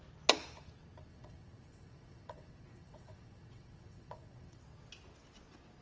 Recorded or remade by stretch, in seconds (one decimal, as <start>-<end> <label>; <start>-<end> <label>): 0.0-1.1 recorded; 1.1-4.6 remade; 4.6-5.8 recorded